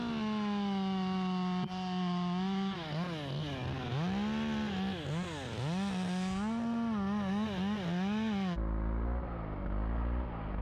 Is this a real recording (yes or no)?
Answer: yes